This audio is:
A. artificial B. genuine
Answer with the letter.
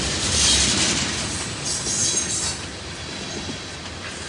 A